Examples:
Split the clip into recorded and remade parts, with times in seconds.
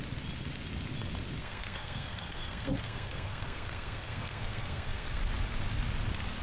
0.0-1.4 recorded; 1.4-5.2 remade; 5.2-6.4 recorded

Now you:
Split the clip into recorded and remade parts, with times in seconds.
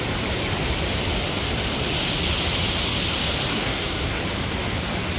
0.0-3.5 recorded; 3.5-4.2 remade; 4.2-5.2 recorded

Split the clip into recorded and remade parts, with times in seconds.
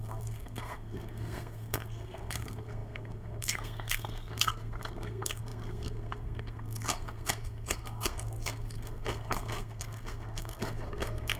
0.0-11.4 remade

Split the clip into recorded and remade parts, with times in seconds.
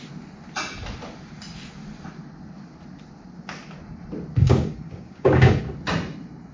0.0-4.4 recorded; 4.4-5.6 remade; 5.6-6.5 recorded